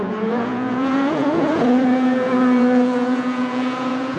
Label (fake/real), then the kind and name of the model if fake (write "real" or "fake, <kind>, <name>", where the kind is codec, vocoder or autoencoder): fake, vocoder, Vocos